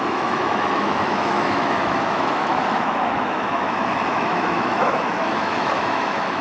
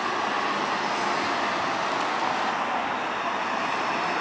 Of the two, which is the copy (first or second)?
first